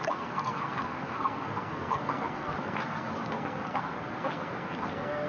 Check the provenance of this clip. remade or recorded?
remade